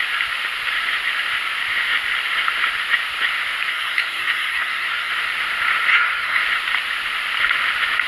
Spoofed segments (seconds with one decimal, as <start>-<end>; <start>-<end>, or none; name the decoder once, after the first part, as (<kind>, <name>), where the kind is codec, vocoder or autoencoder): 3.7-5.1 (codec, SNAC); 5.9-6.4